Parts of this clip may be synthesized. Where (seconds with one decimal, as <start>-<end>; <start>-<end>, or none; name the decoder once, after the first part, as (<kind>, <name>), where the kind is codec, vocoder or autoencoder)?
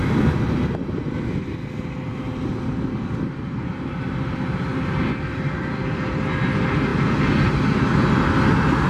none